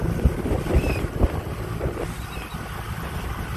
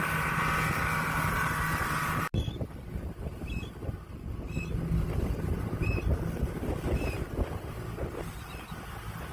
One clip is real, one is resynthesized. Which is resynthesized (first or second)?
first